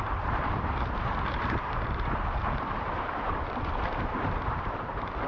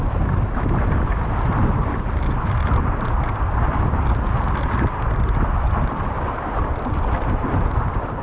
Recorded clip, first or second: second